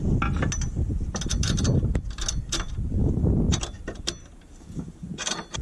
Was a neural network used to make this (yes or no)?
no